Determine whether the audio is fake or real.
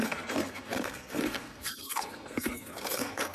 fake